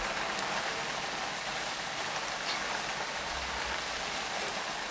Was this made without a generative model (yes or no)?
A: yes